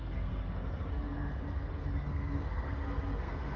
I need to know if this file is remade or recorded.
remade